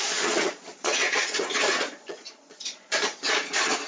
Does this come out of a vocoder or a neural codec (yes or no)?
yes